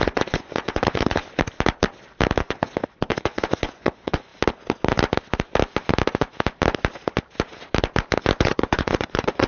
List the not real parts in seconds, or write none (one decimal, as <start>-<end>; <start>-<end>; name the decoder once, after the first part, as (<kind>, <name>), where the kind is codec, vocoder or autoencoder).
0.0-1.2 (vocoder, Vocos); 2.4-4.3; 8.4-9.5